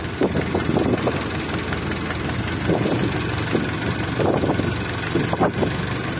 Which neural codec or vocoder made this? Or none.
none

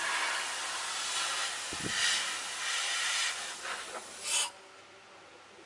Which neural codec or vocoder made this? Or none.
none